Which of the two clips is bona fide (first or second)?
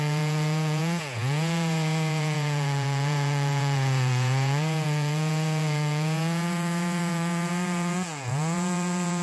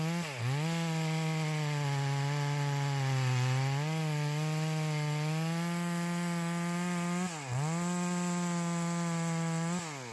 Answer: second